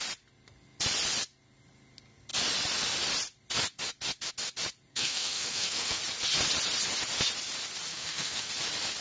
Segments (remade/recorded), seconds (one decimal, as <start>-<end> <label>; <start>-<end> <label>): 0.0-4.9 recorded; 4.9-6.0 remade; 6.0-7.9 recorded; 7.9-8.5 remade; 8.5-9.0 recorded